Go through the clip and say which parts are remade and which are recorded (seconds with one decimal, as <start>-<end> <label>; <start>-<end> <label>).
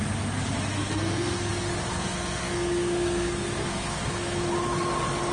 0.0-0.7 recorded; 0.7-1.5 remade; 1.5-1.9 recorded; 1.9-4.5 remade; 4.5-5.3 recorded